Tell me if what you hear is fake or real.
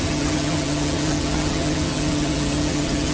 fake